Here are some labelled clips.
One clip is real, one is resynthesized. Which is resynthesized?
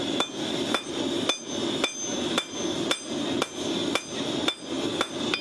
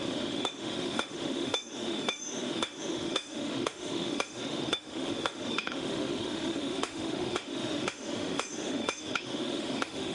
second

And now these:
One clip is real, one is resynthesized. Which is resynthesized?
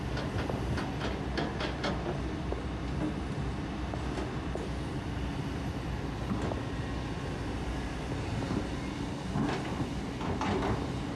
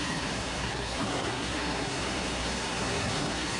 second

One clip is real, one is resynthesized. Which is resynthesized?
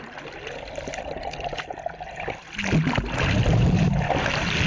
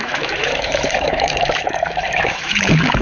second